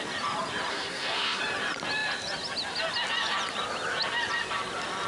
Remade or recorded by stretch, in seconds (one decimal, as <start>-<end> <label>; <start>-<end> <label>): 0.0-0.7 recorded; 0.7-1.4 remade; 1.4-5.1 recorded

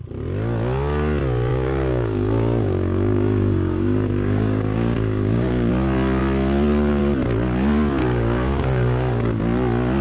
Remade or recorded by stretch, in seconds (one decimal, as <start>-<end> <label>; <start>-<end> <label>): 0.0-1.5 recorded; 1.5-5.7 remade; 5.7-8.0 recorded; 8.0-9.4 remade; 9.4-10.0 recorded

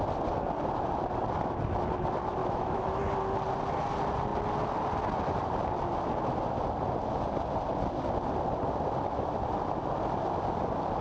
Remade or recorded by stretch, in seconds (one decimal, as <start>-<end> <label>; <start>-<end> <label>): 0.0-2.4 recorded; 2.4-3.0 remade; 3.0-11.0 recorded

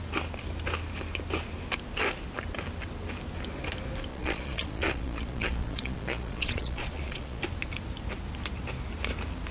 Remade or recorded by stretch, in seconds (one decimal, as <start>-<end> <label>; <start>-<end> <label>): 0.0-4.1 recorded; 4.1-7.4 remade; 7.4-9.5 recorded

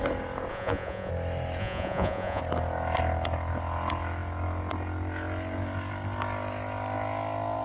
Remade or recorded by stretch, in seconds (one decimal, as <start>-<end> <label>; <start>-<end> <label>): 0.0-0.5 recorded; 0.5-1.1 remade; 1.1-1.6 recorded; 1.6-2.4 remade; 2.4-7.6 recorded

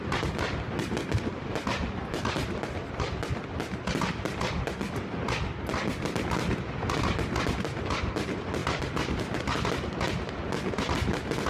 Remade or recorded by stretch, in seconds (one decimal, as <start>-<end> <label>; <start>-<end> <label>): 0.0-8.6 recorded; 8.6-9.2 remade; 9.2-11.5 recorded